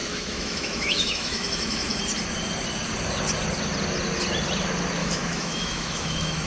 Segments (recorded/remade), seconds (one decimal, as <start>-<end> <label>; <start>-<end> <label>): 0.0-2.0 remade; 2.0-5.0 recorded; 5.0-6.5 remade